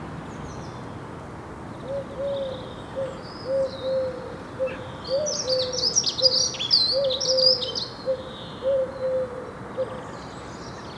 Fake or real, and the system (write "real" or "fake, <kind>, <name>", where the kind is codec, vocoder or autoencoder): real